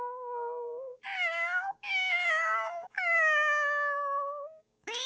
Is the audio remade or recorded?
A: remade